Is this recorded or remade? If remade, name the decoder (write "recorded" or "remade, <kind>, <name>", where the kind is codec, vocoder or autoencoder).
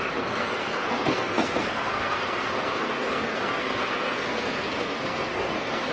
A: remade, codec, SNAC